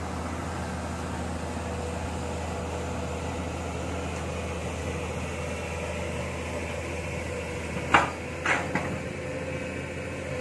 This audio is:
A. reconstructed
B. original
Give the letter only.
B